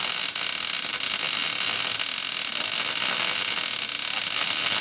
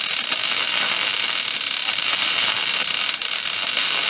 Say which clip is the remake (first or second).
second